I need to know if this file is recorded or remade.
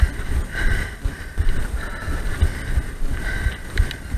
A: recorded